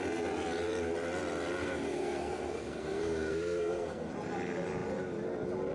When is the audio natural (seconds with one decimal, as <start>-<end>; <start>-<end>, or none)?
0.0-1.6; 4.1-5.7